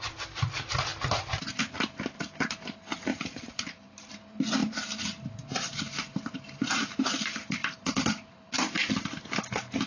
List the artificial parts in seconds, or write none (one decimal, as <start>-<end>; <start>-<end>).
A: 3.1-4.1; 4.6-7.0; 7.6-9.0